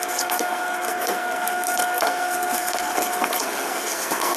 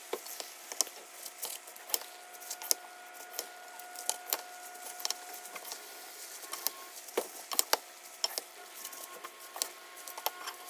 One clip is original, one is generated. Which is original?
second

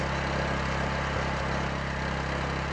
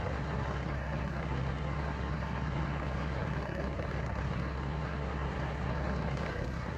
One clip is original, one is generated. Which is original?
first